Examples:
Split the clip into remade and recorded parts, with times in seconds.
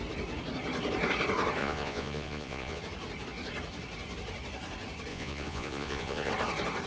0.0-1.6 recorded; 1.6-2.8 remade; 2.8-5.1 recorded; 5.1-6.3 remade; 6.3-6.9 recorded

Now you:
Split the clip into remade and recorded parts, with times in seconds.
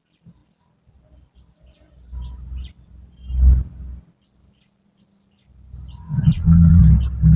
0.0-6.1 recorded; 6.1-6.8 remade; 6.8-7.4 recorded